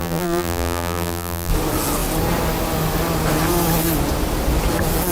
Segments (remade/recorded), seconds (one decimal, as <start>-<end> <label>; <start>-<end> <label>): 0.0-1.5 remade; 1.5-5.1 recorded